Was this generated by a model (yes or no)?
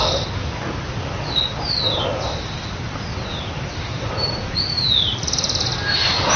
no